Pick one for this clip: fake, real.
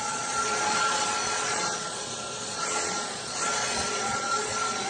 fake